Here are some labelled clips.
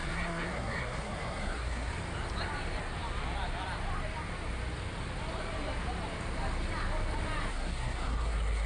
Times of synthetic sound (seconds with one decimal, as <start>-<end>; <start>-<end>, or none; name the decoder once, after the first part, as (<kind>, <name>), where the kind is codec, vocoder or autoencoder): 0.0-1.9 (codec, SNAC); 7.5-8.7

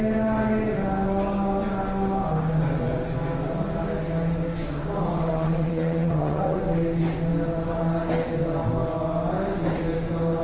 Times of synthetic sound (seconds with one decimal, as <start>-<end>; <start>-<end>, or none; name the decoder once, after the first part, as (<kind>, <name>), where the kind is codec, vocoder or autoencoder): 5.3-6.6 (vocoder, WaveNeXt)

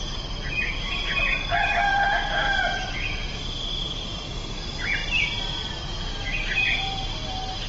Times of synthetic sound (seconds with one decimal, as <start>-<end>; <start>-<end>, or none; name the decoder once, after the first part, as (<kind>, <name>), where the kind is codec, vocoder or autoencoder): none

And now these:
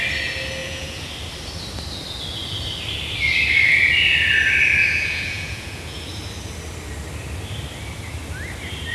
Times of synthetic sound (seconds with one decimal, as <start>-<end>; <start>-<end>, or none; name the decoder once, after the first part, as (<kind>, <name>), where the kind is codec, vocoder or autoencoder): 0.6-1.1 (vocoder, Vocos); 4.8-6.0

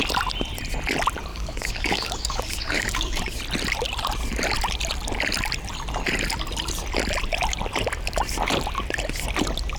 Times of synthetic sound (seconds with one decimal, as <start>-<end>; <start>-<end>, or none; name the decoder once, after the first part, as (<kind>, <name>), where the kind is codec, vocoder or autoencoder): 1.3-3.2 (codec, DAC)

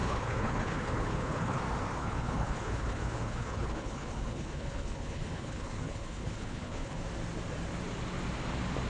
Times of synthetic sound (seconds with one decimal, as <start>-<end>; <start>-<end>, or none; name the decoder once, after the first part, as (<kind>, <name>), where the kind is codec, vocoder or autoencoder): 0.0-1.6 (codec, HILCodec); 2.0-7.0

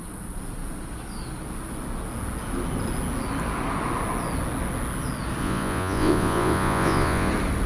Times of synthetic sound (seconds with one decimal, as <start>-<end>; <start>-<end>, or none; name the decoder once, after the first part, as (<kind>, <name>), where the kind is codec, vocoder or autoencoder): 5.4-7.3 (vocoder, Vocos)

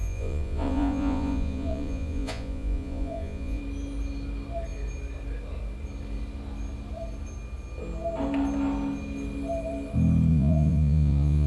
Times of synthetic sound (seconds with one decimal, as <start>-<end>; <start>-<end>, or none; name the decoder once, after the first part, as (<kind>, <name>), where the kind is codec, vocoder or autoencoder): 0.0-3.6 (vocoder, Vocos); 10.3-11.5